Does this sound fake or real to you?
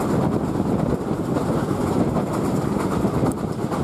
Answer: real